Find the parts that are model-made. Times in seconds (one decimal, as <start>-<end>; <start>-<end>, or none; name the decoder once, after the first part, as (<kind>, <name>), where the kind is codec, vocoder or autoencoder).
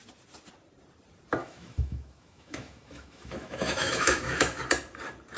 1.4-4.6 (autoencoder, DAC-VAE)